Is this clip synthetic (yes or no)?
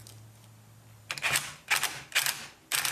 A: no